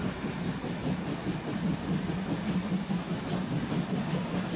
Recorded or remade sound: recorded